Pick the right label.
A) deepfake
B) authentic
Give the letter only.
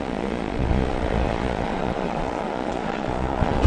A